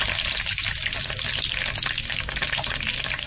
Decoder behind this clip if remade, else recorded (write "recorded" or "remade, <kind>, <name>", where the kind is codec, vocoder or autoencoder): recorded